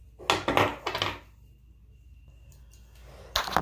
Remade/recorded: recorded